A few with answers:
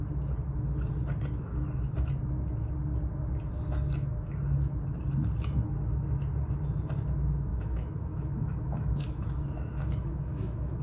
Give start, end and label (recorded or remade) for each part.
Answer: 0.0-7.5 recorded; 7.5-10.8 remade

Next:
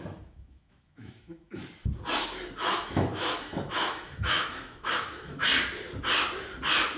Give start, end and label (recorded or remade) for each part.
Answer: 0.0-1.6 remade; 1.6-2.6 recorded; 2.6-5.5 remade; 5.5-7.0 recorded

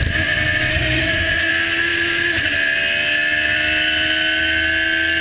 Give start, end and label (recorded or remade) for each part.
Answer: 0.0-0.7 recorded; 0.7-1.5 remade; 1.5-5.2 recorded

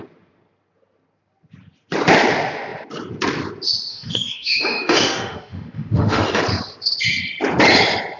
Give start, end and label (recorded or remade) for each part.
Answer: 0.0-3.9 recorded; 3.9-6.4 remade; 6.4-8.2 recorded

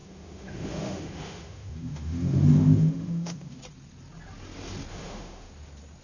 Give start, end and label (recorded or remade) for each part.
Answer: 0.0-3.6 remade; 3.6-4.9 recorded; 4.9-5.5 remade; 5.5-6.0 recorded

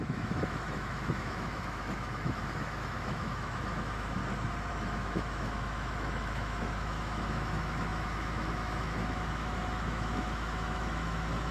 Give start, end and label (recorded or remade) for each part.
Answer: 0.0-4.2 remade; 4.2-4.7 recorded; 4.7-11.5 remade